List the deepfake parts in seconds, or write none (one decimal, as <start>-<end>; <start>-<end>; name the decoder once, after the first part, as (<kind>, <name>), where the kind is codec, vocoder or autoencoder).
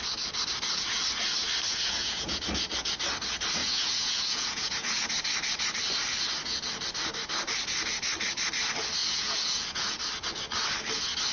1.7-2.4 (vocoder, Vocos); 3.6-5.1; 9.0-10.0